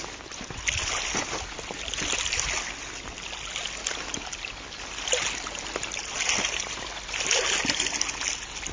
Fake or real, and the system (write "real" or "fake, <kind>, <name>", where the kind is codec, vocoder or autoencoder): real